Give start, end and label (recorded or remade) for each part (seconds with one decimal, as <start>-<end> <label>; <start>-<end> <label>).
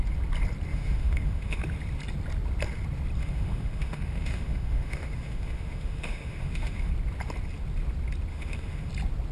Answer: 0.0-0.7 recorded; 0.7-1.6 remade; 1.6-3.2 recorded; 3.2-6.9 remade; 6.9-8.3 recorded; 8.3-8.9 remade; 8.9-9.3 recorded